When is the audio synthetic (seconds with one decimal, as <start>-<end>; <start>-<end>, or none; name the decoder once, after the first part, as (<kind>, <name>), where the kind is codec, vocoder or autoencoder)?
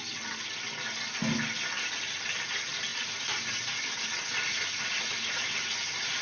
none